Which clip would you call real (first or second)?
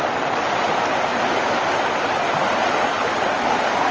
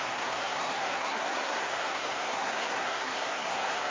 first